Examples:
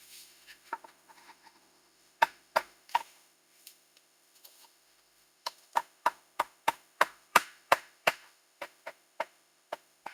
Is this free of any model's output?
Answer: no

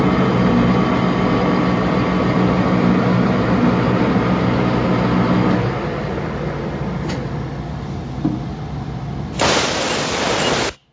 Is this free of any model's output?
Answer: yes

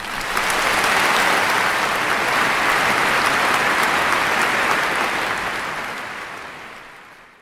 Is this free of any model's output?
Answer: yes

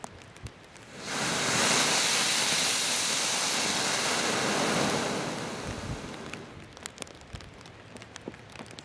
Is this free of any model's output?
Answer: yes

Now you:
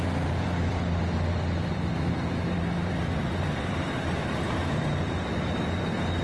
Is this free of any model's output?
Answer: no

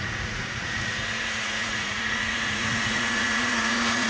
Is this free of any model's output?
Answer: no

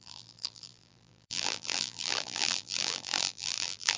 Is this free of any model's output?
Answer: no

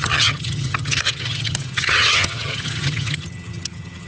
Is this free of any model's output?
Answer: no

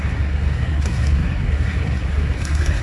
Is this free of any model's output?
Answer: no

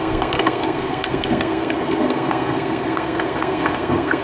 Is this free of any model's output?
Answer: no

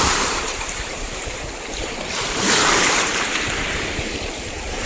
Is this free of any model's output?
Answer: no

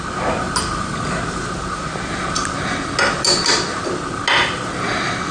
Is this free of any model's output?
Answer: yes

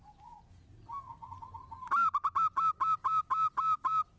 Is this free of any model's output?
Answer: yes